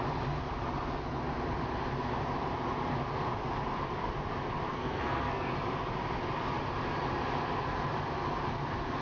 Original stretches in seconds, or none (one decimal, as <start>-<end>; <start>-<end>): 0.0-4.7; 5.5-9.0